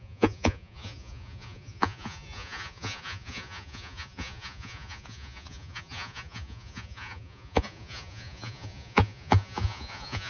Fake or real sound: fake